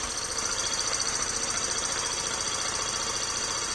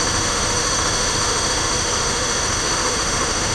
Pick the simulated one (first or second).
second